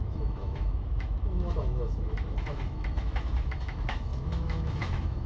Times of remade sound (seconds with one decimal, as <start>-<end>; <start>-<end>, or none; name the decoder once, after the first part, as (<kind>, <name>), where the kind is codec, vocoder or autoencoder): 0.0-5.3 (autoencoder, DAC-VAE)